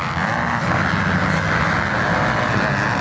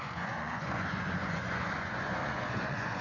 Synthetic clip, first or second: second